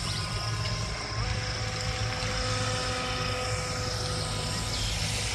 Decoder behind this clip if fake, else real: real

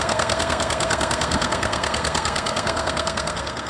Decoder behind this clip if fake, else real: fake, codec, SNAC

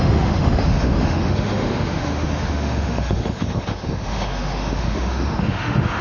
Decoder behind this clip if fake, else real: fake, autoencoder, DAC-VAE